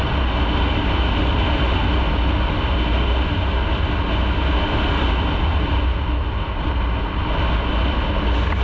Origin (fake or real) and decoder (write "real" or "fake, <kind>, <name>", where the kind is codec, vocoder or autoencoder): real